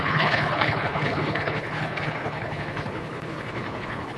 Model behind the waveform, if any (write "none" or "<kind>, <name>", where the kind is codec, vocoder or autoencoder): codec, HILCodec